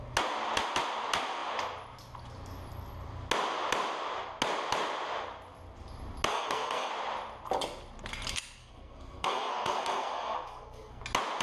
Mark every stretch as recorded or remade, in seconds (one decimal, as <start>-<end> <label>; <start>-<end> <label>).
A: 0.0-6.3 recorded; 6.3-6.9 remade; 6.9-8.6 recorded; 8.6-11.0 remade; 11.0-11.4 recorded